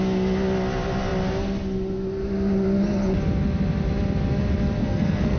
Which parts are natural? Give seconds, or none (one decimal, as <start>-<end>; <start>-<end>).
0.0-4.8